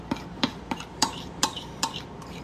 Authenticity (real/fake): fake